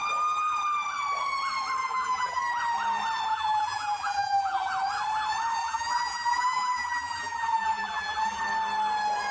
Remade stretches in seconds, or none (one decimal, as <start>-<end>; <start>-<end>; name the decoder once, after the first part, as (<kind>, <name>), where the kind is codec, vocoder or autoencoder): 1.8-2.4 (vocoder, BigVGAN v2); 3.3-4.7; 5.6-8.4